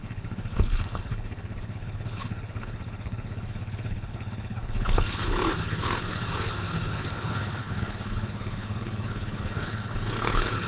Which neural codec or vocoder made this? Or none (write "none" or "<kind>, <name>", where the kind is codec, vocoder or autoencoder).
codec, HILCodec